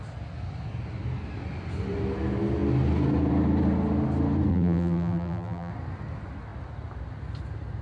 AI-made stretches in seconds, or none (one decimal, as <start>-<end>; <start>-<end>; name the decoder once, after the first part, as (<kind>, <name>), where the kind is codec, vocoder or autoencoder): 4.5-5.7 (vocoder, BigVGAN v2)